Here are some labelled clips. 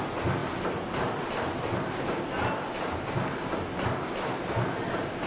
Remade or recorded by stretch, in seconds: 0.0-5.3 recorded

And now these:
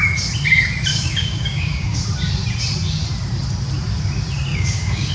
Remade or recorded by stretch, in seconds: 0.0-0.9 recorded; 0.9-2.0 remade; 2.0-4.5 recorded; 4.5-5.1 remade

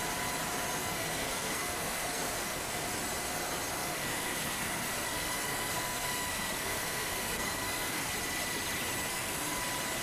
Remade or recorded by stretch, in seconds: 0.0-0.8 recorded; 0.8-2.9 remade; 2.9-3.8 recorded; 3.8-8.1 remade; 8.1-9.1 recorded; 9.1-9.6 remade; 9.6-10.0 recorded

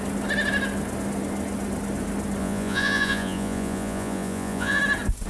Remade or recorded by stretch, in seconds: 0.0-2.4 recorded; 2.4-4.8 remade; 4.8-5.3 recorded

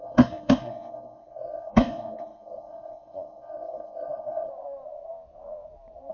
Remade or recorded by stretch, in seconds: 0.0-4.5 remade; 4.5-6.1 recorded

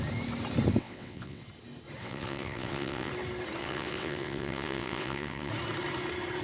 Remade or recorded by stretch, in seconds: 0.0-0.8 recorded; 0.8-1.4 remade; 1.4-2.0 recorded; 2.0-3.1 remade; 3.1-3.6 recorded; 3.6-5.5 remade; 5.5-6.4 recorded

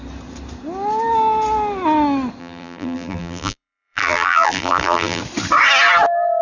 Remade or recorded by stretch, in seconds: 0.0-2.4 recorded; 2.4-5.2 remade; 5.2-6.4 recorded